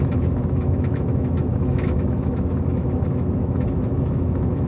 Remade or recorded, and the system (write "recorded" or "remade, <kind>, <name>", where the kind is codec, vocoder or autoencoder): remade, autoencoder, DAC-VAE